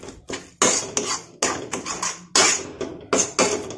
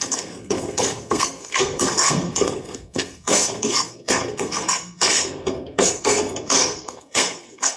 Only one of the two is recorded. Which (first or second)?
first